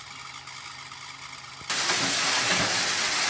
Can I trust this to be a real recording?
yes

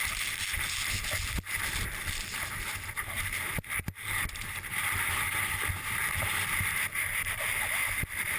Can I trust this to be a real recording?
yes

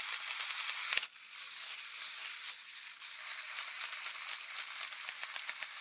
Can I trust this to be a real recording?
yes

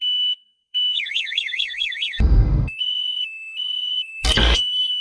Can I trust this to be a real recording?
no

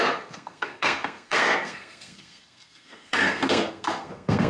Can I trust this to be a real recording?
no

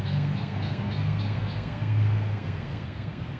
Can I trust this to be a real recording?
no